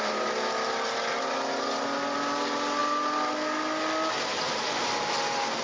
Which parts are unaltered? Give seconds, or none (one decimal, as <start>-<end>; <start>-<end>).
0.0-5.6